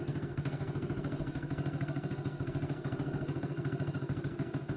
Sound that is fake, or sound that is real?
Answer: fake